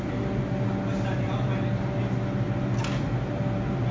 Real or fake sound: real